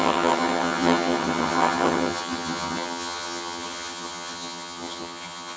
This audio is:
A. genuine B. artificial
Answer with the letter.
B